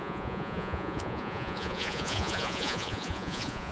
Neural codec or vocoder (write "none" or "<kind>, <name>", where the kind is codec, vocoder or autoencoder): vocoder, Vocos